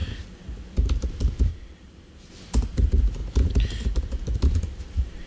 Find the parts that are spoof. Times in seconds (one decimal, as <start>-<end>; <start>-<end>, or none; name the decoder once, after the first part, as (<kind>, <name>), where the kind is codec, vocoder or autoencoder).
1.0-3.2 (vocoder, BigVGAN v2); 4.8-5.3